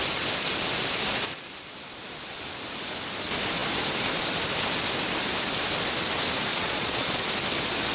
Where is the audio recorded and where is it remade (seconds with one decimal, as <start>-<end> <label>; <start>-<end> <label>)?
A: 0.0-6.5 recorded; 6.5-7.3 remade; 7.3-7.9 recorded